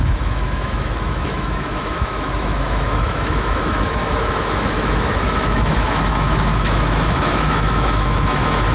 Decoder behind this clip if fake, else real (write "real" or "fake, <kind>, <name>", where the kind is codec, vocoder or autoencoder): fake, autoencoder, DAC-VAE